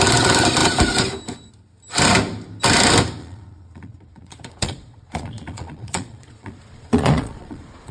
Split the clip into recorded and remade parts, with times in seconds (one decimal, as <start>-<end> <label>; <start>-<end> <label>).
0.0-3.2 recorded; 3.2-7.9 remade